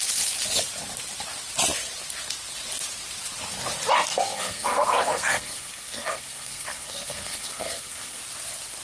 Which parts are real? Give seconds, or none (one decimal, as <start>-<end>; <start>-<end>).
0.0-4.1; 8.2-8.8